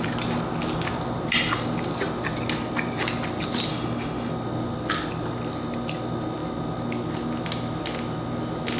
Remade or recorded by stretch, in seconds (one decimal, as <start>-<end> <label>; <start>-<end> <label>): 0.0-3.7 recorded; 3.7-4.3 remade; 4.3-8.8 recorded